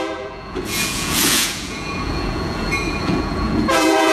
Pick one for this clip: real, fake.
fake